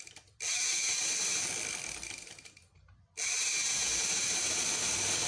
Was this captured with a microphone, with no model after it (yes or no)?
yes